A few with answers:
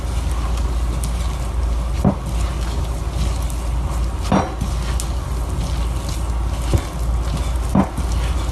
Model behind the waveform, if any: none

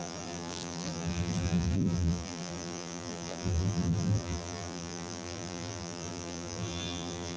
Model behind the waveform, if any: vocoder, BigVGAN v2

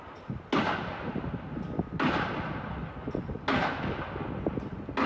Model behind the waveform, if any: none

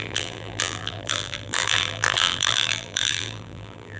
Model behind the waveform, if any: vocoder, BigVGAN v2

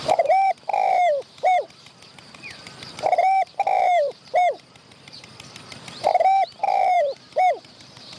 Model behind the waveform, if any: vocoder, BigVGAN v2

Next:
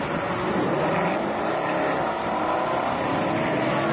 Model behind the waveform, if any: none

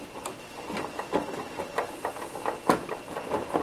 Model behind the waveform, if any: none